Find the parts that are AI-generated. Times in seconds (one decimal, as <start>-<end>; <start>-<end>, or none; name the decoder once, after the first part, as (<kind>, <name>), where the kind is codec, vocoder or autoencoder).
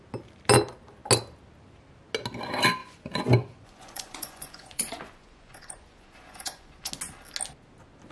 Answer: 2.8-6.9 (vocoder, Vocos)